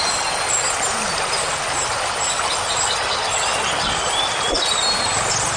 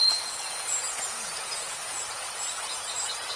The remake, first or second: second